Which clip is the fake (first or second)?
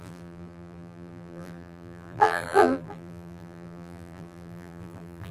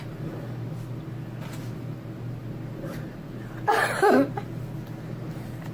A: first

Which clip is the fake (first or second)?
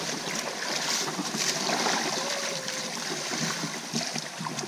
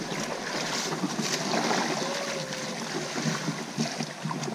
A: first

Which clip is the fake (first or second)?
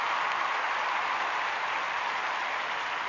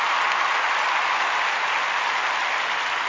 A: first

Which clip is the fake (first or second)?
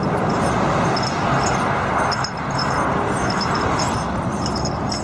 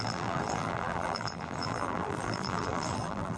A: second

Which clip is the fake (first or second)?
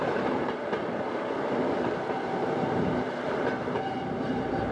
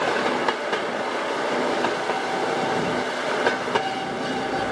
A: first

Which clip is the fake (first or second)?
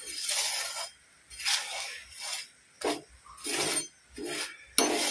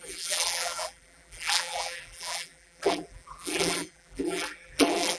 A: second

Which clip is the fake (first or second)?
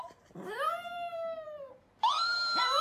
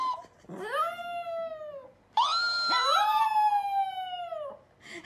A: first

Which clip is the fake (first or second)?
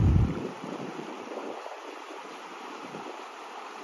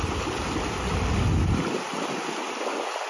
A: first